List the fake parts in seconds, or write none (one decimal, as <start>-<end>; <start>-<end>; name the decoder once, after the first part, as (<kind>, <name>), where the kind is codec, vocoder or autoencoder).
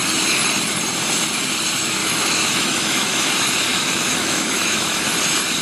2.0-3.3 (autoencoder, DAC-VAE); 3.7-5.0